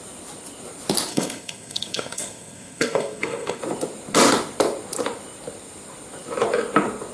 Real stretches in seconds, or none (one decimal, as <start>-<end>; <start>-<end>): 0.0-1.1; 3.6-7.1